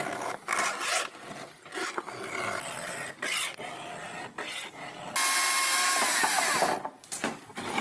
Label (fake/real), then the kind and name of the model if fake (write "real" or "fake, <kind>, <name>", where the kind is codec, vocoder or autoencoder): real